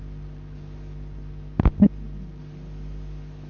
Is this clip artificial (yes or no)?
no